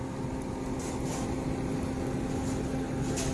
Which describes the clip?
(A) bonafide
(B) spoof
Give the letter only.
A